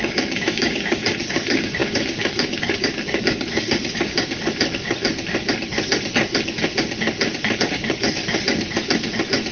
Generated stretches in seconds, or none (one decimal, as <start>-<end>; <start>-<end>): 0.0-4.1; 7.6-8.2